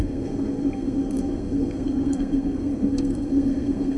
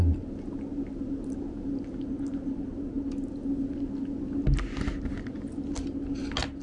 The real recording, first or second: second